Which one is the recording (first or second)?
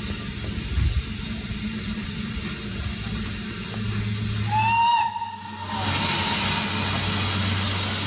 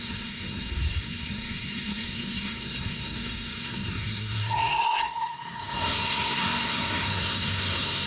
first